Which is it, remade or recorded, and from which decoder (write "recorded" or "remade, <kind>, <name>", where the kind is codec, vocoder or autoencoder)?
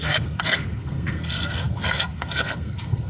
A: remade, codec, SNAC